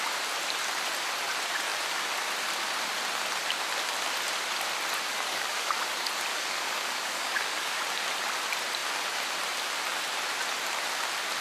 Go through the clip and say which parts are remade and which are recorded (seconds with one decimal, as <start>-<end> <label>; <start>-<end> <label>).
0.0-5.1 recorded; 5.1-5.8 remade; 5.8-6.3 recorded; 6.3-7.8 remade; 7.8-11.4 recorded